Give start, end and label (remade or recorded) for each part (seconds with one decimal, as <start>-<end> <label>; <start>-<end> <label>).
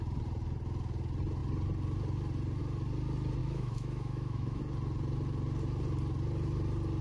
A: 0.0-3.4 recorded; 3.4-4.6 remade; 4.6-7.0 recorded